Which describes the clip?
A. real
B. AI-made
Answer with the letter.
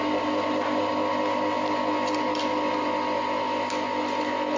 A